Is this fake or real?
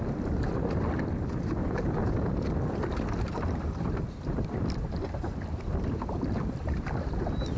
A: fake